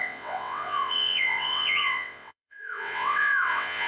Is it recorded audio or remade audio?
remade